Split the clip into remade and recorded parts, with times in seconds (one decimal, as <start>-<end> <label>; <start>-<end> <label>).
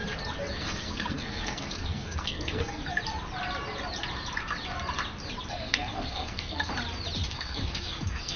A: 0.0-0.5 recorded; 0.5-2.8 remade; 2.8-5.5 recorded; 5.5-6.7 remade; 6.7-7.3 recorded; 7.3-8.4 remade